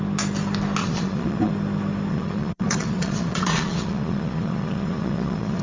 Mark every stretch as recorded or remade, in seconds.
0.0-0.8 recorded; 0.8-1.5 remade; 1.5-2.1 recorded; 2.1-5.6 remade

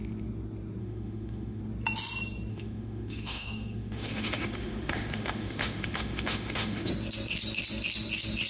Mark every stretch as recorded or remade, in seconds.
0.0-0.8 recorded; 0.8-1.6 remade; 1.6-2.5 recorded; 2.5-6.9 remade; 6.9-8.5 recorded

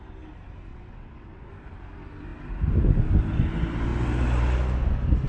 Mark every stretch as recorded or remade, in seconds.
0.0-0.7 recorded; 0.7-1.5 remade; 1.5-5.3 recorded

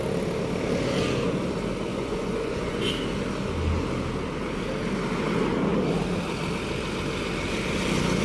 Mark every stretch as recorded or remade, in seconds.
0.0-1.9 recorded; 1.9-2.9 remade; 2.9-8.2 recorded